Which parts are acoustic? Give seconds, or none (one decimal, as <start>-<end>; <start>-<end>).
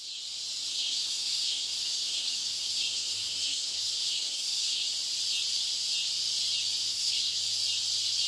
0.0-0.7; 4.9-6.9; 7.4-8.3